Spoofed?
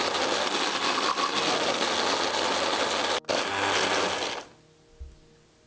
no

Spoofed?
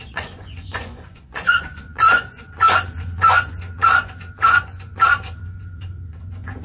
yes